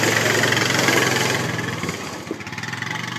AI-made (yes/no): no